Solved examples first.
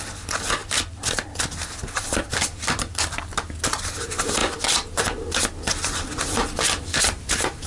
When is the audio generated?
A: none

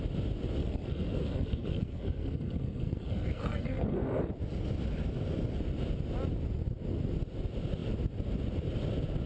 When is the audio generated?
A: 0.6-4.3 (codec, SNAC)

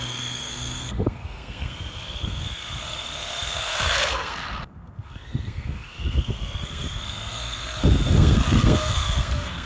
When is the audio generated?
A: 0.0-9.7 (codec, SNAC)

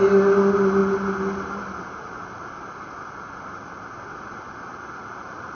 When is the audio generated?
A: none

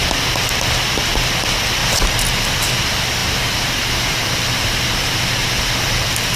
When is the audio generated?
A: 1.8-2.8 (vocoder, BigVGAN v2); 3.2-6.0

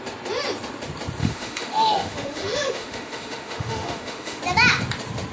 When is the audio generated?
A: 1.2-4.4 (autoencoder, DAC-VAE)